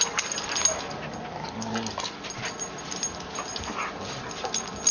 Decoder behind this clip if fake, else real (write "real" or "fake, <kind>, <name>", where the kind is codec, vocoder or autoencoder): real